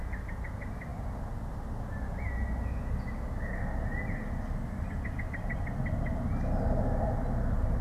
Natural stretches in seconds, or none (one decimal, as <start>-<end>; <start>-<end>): 0.0-7.8